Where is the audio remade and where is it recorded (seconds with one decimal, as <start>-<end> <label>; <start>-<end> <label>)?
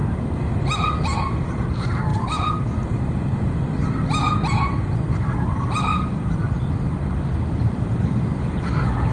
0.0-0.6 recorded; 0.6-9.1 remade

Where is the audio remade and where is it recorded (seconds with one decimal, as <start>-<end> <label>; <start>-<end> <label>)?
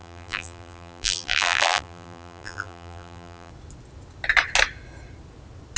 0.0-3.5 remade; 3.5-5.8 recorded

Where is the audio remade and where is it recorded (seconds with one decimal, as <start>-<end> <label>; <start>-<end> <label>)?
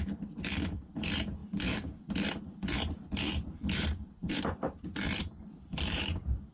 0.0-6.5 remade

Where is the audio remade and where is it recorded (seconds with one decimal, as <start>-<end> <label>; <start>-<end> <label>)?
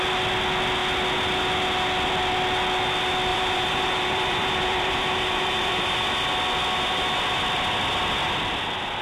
0.0-3.3 recorded; 3.3-6.1 remade; 6.1-9.0 recorded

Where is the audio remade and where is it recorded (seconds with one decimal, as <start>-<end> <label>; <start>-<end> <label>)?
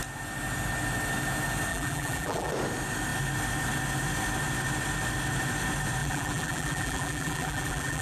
0.0-1.7 recorded; 1.7-2.5 remade; 2.5-6.0 recorded; 6.0-8.0 remade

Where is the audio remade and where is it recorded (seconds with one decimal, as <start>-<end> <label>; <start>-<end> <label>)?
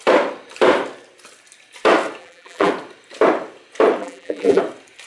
0.0-2.2 recorded; 2.2-2.7 remade; 2.7-4.0 recorded; 4.0-4.6 remade; 4.6-5.1 recorded